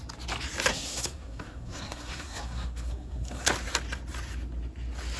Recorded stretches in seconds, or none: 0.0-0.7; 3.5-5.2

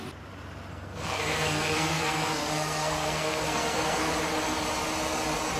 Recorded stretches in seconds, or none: 0.0-0.7; 4.1-5.6

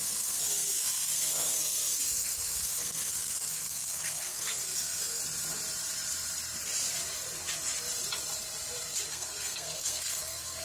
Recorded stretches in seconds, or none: 5.2-9.1

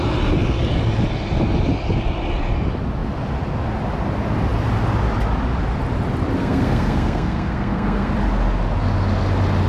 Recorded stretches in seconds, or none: 0.0-6.4; 8.1-9.7

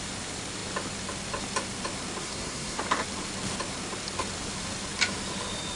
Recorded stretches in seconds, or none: 0.0-2.2; 2.8-5.8

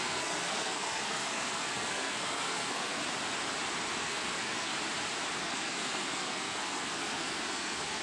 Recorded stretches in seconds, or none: 3.0-4.0; 4.7-5.4

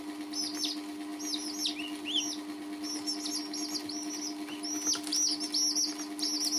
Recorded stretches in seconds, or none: 0.0-6.6

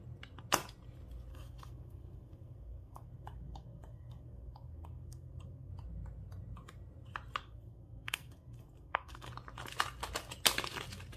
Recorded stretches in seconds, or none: 0.0-1.3; 5.7-7.4; 9.3-11.2